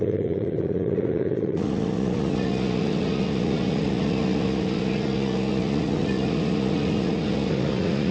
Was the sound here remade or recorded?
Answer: remade